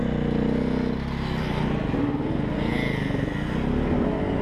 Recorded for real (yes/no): yes